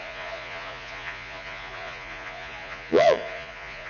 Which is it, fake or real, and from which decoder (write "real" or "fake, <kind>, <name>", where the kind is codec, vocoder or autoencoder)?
fake, vocoder, Vocos